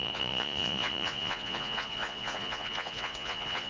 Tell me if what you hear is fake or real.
fake